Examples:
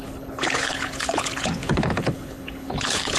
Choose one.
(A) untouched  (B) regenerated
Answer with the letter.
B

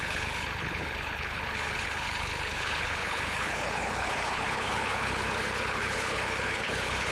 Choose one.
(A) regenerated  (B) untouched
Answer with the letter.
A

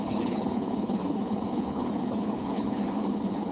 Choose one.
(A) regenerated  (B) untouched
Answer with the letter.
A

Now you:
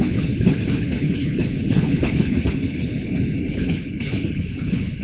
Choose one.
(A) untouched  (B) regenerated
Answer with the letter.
B